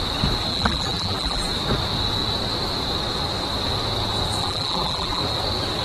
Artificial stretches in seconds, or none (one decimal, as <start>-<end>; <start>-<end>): 0.5-1.4; 4.4-5.2